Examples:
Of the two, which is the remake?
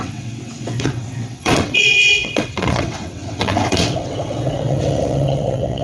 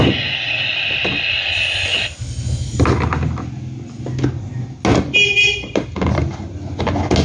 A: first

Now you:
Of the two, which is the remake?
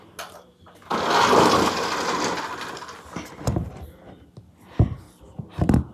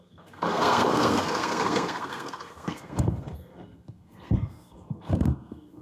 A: second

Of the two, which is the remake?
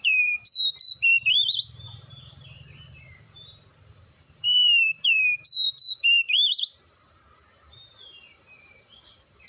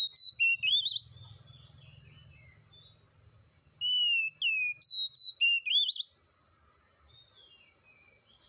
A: first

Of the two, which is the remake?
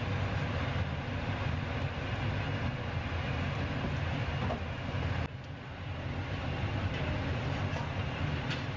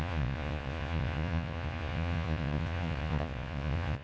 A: second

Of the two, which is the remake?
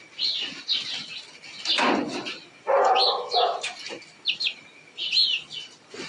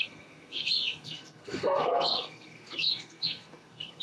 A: second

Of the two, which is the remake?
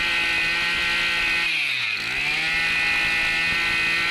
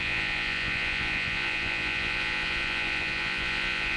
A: second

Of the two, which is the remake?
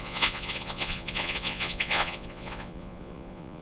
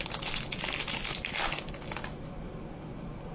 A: first